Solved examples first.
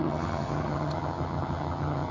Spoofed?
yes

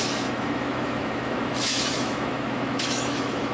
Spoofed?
yes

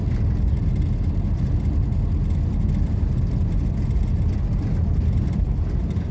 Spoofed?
no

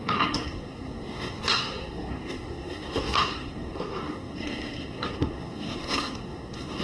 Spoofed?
yes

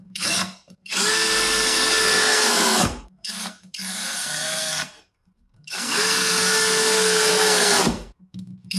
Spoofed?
yes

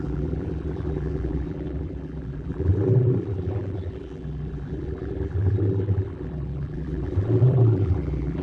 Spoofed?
yes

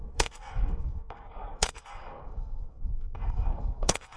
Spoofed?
yes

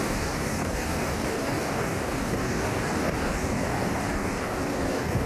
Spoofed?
yes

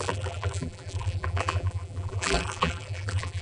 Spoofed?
yes